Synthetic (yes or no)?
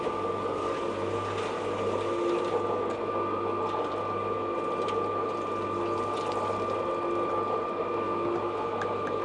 no